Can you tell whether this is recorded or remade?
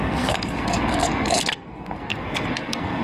remade